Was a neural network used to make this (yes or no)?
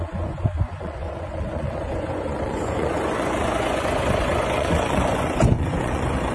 yes